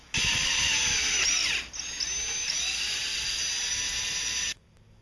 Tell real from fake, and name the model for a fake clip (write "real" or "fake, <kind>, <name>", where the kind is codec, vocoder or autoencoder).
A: real